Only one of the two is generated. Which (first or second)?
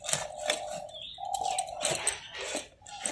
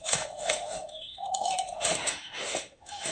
second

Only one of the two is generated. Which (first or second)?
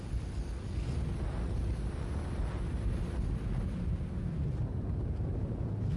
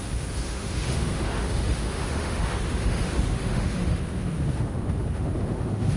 second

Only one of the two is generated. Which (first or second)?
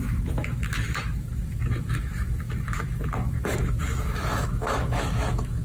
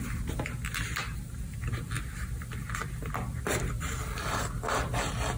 first